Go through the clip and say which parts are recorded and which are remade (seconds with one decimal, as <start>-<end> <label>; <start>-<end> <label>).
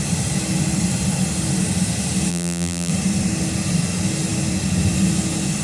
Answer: 0.0-2.3 recorded; 2.3-2.9 remade; 2.9-5.6 recorded